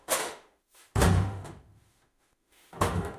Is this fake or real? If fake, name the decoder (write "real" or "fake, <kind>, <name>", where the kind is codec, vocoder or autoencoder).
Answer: fake, autoencoder, DAC-VAE